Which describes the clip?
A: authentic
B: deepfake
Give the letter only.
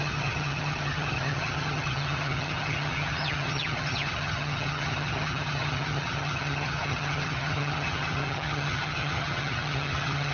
B